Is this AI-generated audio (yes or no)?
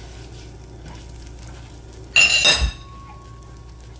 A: no